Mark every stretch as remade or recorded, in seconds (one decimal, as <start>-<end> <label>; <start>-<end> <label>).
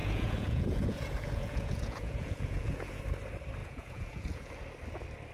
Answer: 0.0-3.0 remade; 3.0-3.6 recorded; 3.6-4.5 remade; 4.5-5.3 recorded